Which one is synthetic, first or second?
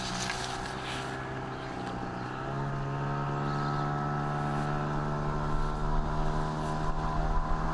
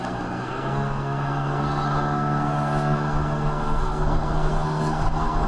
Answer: second